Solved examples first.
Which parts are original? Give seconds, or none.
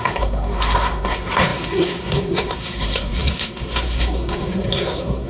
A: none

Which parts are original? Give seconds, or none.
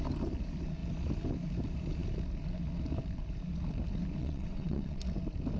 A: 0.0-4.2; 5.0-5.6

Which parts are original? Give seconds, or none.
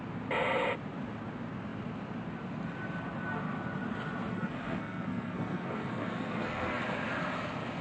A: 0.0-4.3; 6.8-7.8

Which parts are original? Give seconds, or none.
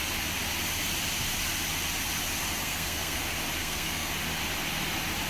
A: 0.0-2.6; 3.2-3.6; 4.1-5.3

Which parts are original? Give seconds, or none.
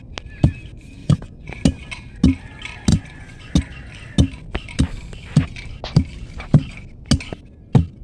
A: 0.0-1.0; 1.6-2.9; 3.5-8.0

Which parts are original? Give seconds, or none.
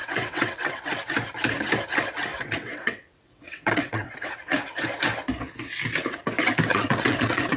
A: 0.9-2.3; 4.3-6.7